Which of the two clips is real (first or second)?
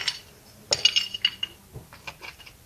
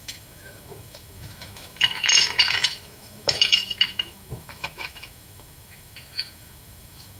first